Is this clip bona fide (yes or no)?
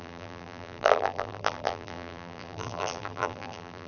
no